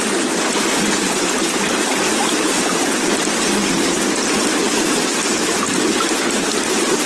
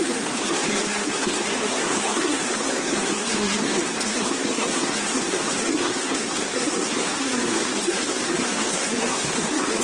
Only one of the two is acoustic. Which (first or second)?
first